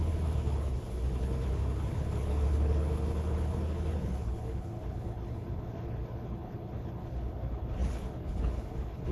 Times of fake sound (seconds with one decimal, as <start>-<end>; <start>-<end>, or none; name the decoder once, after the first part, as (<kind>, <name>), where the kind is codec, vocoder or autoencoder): 0.0-9.1 (codec, HILCodec)